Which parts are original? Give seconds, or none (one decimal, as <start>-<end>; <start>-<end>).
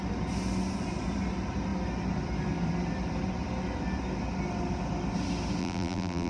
0.0-5.6